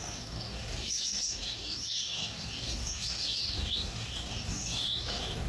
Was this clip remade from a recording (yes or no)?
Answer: yes